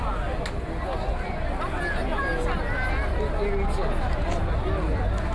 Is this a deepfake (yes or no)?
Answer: no